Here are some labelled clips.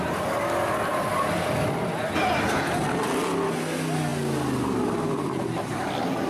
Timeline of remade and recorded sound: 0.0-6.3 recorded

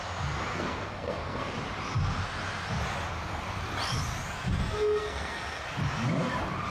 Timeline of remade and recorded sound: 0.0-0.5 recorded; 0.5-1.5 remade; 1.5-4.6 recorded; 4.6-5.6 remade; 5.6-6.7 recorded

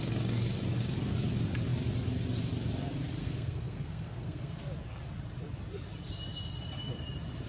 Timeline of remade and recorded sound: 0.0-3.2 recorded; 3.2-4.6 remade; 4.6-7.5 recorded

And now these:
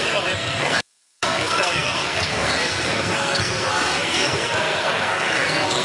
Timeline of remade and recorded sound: 0.0-5.8 remade